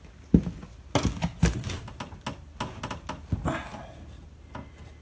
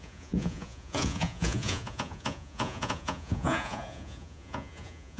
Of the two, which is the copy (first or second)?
second